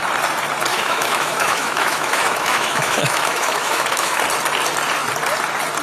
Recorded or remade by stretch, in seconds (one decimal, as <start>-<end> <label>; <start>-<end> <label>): 0.0-0.7 recorded; 0.7-4.2 remade; 4.2-5.8 recorded